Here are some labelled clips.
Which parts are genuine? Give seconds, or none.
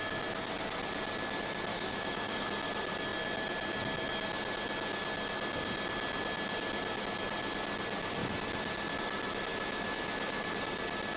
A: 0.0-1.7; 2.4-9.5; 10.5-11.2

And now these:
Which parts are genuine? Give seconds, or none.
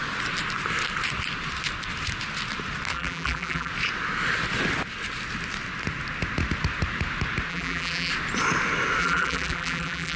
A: 0.0-2.9; 3.7-7.5; 8.1-9.0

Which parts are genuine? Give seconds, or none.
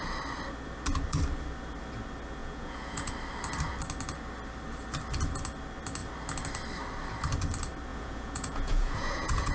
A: 0.0-2.4; 3.1-7.9